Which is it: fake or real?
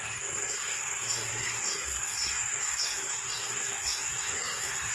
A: fake